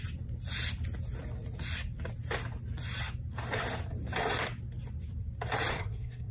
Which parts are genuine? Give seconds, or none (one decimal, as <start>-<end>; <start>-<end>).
0.0-5.7